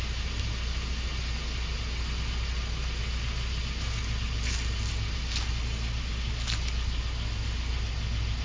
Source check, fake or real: real